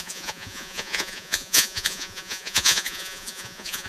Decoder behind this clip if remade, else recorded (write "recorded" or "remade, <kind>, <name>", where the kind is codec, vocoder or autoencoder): remade, vocoder, Vocos